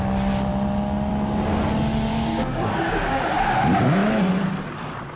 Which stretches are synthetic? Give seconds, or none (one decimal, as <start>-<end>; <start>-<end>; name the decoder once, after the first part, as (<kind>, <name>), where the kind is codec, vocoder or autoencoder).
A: 2.1-3.3 (codec, DAC)